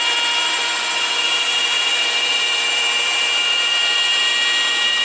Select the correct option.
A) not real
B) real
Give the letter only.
B